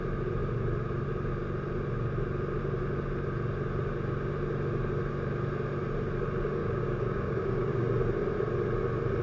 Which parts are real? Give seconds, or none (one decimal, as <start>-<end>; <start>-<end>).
0.0-6.6; 7.9-9.2